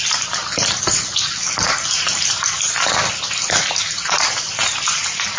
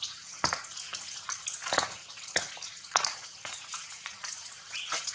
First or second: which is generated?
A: second